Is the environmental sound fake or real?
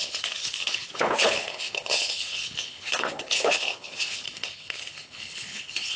fake